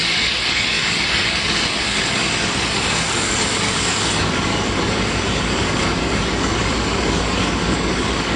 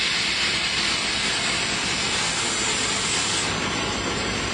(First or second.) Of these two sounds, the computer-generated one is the first